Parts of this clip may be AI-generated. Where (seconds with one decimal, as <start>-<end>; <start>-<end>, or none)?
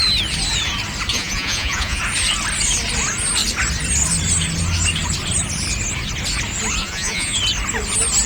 1.1-2.0; 6.8-7.4